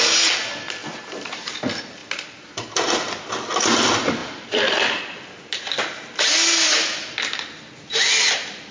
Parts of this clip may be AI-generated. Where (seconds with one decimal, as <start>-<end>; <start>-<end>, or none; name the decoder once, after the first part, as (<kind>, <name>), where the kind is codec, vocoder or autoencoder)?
0.8-1.4 (vocoder, BigVGAN v2); 4.2-5.0